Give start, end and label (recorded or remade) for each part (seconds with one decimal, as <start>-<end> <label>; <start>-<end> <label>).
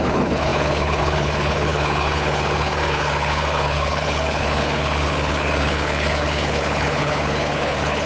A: 0.0-8.1 remade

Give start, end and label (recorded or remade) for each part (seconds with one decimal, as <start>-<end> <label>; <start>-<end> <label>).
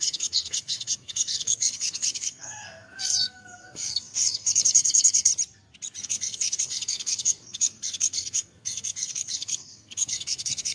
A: 0.0-5.3 remade; 5.3-6.0 recorded; 6.0-10.7 remade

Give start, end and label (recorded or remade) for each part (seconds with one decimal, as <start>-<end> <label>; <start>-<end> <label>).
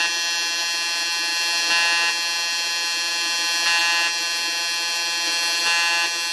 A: 0.0-6.3 recorded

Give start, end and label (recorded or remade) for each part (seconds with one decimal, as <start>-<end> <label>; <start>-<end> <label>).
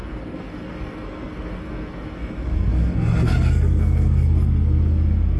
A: 0.0-5.4 remade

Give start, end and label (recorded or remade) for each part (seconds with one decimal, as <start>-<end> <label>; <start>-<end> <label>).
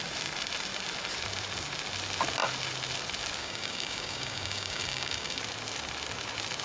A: 0.0-3.4 recorded; 3.4-5.4 remade; 5.4-6.6 recorded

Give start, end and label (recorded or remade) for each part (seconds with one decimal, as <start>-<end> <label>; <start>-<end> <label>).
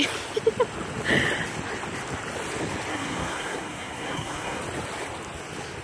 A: 0.0-2.9 recorded; 2.9-4.6 remade; 4.6-5.8 recorded